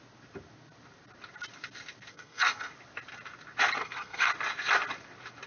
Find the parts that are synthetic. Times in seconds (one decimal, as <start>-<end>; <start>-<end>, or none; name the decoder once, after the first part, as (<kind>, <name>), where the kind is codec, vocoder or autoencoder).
2.1-2.7 (codec, SNAC); 3.8-4.3